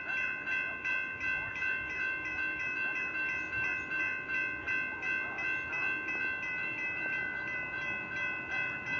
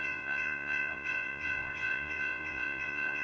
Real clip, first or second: first